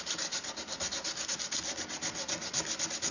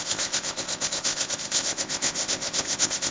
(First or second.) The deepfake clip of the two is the second